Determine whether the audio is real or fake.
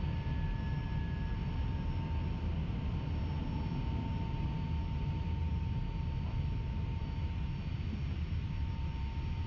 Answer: real